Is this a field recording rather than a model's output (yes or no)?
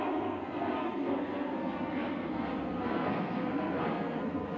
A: no